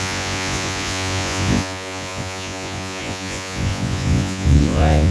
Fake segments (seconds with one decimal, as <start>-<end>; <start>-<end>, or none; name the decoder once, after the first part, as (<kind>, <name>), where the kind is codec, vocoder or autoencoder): 0.0-5.1 (vocoder, Vocos)